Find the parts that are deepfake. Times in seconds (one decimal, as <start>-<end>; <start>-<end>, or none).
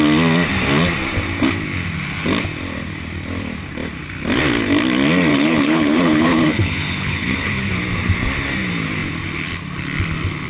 5.3-7.7